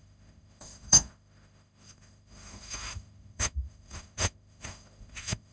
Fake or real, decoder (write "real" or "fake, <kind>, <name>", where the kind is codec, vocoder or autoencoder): fake, autoencoder, DAC-VAE